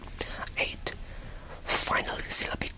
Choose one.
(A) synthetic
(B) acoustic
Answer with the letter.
B